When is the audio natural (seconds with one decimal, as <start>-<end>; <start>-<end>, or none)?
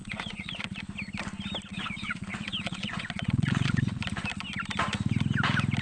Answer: 0.8-1.7; 4.0-5.8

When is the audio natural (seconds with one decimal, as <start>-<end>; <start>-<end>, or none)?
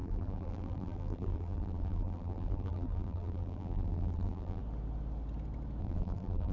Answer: 4.6-5.8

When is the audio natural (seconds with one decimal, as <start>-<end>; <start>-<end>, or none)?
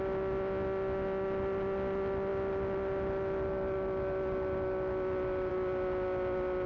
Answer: 0.0-6.7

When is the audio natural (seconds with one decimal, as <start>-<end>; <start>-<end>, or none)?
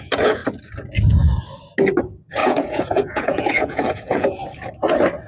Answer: 0.4-2.0; 4.4-5.3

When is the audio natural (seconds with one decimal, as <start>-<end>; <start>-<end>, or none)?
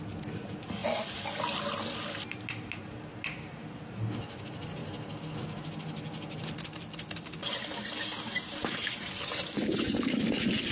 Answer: 0.0-10.7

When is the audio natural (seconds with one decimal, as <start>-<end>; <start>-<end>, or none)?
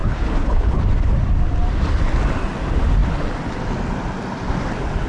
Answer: 0.8-5.1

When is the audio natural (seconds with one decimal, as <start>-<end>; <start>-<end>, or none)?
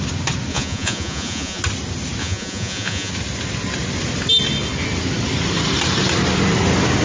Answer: 0.0-0.5; 1.6-2.2; 3.1-7.0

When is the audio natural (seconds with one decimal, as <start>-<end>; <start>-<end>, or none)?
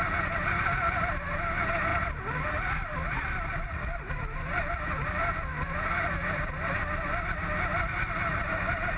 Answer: 0.0-9.0